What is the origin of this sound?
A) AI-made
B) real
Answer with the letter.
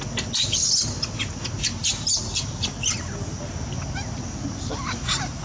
B